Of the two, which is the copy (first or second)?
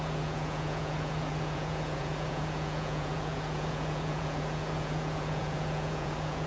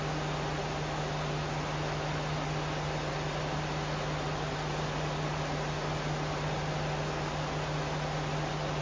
first